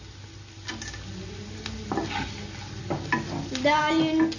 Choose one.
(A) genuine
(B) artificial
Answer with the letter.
A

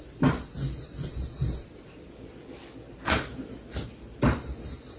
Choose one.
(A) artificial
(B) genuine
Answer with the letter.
B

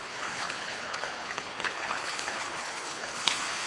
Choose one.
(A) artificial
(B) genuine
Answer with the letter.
A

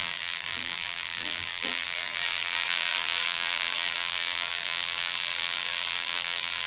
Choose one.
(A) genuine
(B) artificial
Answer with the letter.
B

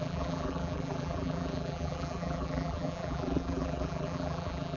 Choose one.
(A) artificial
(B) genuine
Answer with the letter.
A